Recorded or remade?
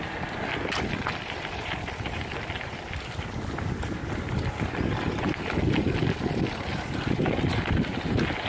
recorded